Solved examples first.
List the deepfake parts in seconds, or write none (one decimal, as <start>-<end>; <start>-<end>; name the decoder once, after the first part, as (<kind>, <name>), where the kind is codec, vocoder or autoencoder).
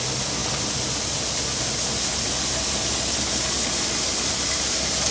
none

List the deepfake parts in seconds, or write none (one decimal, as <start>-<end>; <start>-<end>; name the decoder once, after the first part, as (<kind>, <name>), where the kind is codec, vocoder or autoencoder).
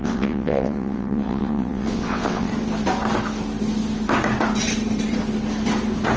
0.0-2.5 (vocoder, WaveNeXt)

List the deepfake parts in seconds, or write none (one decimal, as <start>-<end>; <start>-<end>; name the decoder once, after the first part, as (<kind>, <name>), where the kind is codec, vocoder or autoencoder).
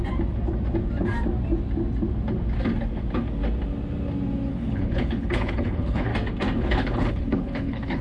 4.5-6.1 (codec, HILCodec); 6.6-8.0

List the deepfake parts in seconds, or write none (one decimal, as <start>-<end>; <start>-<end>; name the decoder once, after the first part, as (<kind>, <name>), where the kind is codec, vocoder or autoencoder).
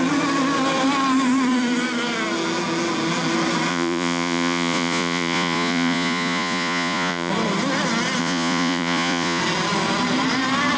3.7-7.3 (vocoder, Vocos); 8.2-9.4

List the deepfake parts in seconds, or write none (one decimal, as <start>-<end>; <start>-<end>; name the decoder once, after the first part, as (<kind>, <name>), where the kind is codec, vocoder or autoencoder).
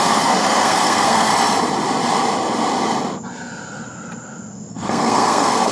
0.0-1.3 (codec, SNAC); 4.7-5.7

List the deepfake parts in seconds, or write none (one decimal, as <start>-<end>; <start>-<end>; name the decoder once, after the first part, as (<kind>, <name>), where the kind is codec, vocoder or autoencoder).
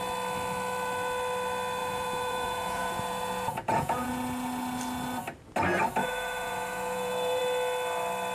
1.8-4.1 (vocoder, Vocos); 6.0-7.4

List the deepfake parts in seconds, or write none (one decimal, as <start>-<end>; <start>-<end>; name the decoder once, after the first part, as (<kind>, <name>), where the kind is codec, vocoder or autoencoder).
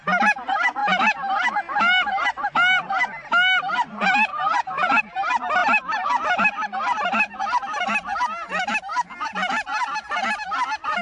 4.3-5.0 (vocoder, Vocos)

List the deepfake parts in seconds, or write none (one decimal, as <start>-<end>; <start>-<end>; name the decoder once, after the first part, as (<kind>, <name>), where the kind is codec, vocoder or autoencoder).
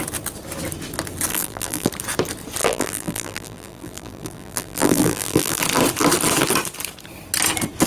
1.3-1.9 (vocoder, BigVGAN v2); 2.6-5.6